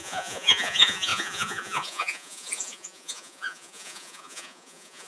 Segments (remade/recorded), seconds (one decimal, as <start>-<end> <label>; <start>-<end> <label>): 0.0-5.1 remade